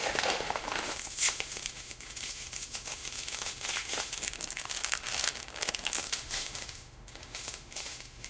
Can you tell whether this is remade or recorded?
remade